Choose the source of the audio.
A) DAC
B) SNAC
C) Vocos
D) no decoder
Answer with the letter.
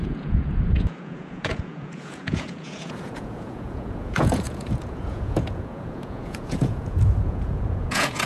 C